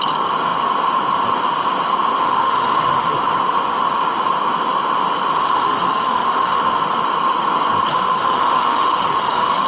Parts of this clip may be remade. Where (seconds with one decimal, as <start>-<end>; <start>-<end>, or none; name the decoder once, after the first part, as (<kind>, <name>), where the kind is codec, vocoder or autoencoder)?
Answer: 2.2-3.1 (autoencoder, DAC-VAE); 5.4-6.6; 7.9-9.7